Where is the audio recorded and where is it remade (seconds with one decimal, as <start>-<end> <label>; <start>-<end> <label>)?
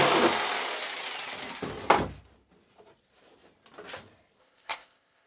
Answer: 0.0-4.4 recorded; 4.4-5.3 remade